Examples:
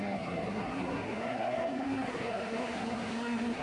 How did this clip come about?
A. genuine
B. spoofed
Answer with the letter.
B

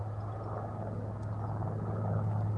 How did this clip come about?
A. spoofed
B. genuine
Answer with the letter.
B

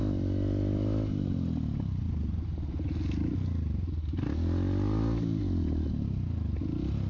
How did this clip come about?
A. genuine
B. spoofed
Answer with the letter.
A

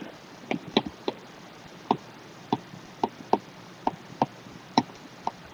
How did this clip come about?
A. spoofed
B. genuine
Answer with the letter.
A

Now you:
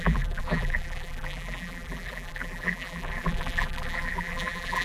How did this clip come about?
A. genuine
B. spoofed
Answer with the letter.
B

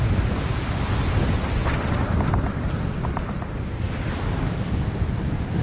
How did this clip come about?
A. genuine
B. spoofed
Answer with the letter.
A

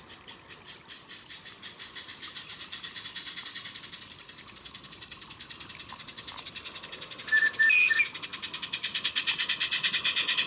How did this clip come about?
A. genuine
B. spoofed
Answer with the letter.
A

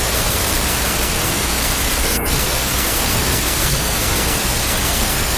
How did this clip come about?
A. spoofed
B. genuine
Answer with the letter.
A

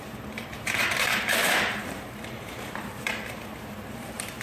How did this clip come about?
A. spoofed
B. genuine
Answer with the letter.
A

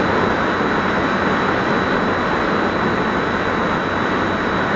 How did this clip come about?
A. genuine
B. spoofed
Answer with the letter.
A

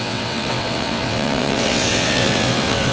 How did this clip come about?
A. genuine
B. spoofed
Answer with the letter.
B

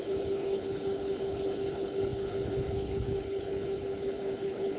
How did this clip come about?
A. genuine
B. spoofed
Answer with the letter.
B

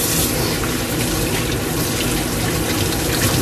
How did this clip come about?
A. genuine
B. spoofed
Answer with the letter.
A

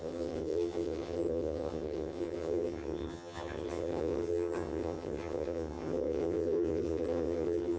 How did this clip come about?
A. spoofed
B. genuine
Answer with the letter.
A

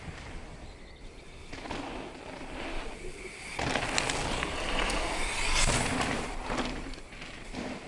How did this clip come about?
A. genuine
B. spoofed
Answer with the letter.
A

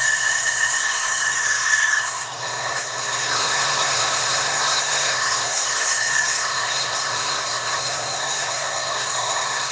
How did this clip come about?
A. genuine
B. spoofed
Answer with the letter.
B